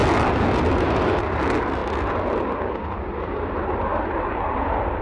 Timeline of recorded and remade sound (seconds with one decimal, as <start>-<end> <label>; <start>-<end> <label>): 0.0-5.0 recorded